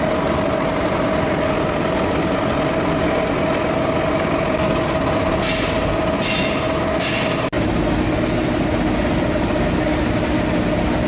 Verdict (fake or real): real